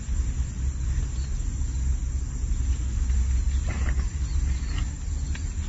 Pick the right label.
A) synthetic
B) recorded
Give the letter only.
B